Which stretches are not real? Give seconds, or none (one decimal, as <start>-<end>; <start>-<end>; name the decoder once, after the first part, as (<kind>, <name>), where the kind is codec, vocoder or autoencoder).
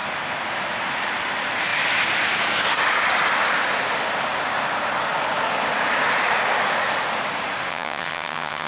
7.7-8.7 (vocoder, HiFi-GAN)